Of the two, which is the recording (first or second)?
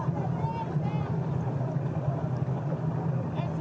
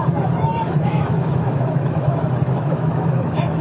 first